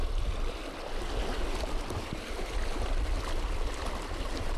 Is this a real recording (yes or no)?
yes